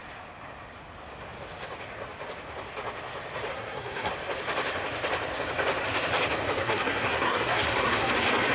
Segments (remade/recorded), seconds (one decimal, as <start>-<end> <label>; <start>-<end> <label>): 0.0-3.5 recorded; 3.5-4.1 remade; 4.1-6.6 recorded; 6.6-8.1 remade; 8.1-8.5 recorded